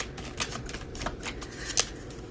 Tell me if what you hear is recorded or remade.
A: recorded